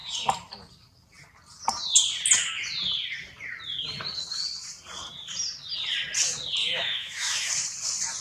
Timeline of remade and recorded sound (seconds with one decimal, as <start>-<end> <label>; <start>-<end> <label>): 0.0-6.6 recorded; 6.6-7.5 remade; 7.5-8.2 recorded